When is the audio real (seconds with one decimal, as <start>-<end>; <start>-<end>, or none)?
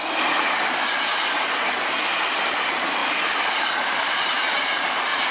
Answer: 0.0-5.3